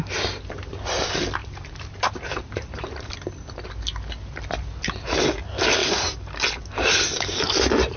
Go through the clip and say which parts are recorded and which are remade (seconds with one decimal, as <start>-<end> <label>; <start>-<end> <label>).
0.0-1.4 recorded; 1.4-3.1 remade; 3.1-5.8 recorded; 5.8-6.4 remade; 6.4-8.0 recorded